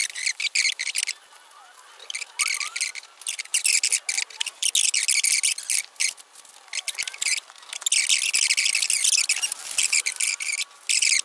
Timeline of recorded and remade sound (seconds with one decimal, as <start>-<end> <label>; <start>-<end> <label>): 0.0-11.2 recorded